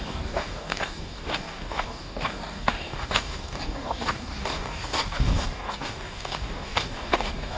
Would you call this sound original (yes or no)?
no